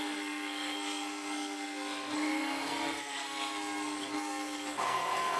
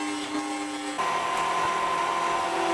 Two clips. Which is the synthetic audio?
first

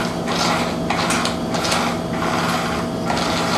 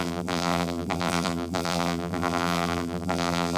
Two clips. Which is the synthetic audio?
second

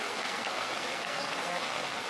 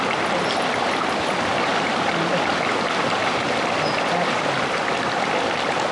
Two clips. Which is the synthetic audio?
first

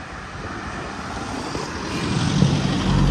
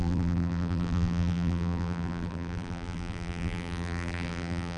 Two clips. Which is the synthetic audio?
second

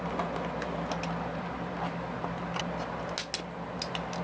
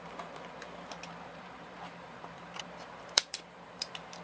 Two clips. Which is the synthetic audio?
second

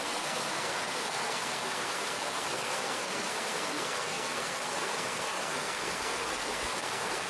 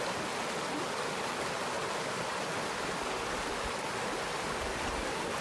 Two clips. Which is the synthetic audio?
first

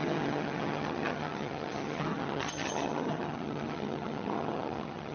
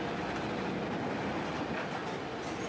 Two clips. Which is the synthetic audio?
first